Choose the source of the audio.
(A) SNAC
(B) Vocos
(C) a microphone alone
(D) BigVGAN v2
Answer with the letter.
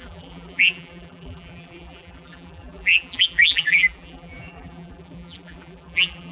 D